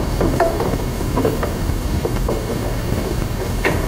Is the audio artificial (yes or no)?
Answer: yes